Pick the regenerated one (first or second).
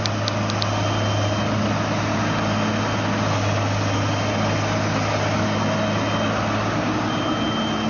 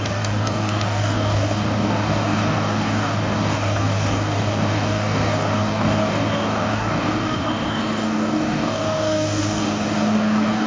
second